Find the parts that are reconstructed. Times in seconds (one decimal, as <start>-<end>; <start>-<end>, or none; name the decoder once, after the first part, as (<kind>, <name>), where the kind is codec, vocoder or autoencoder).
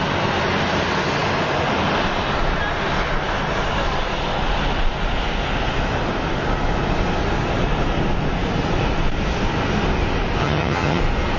10.4-11.0 (vocoder, HiFi-GAN)